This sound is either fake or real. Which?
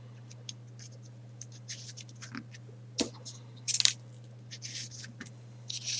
real